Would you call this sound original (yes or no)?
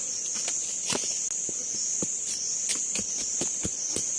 yes